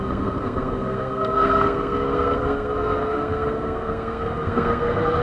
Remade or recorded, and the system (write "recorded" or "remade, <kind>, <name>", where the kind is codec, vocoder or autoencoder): remade, codec, SNAC